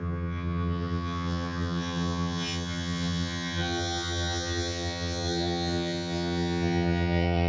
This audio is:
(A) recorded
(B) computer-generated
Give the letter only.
B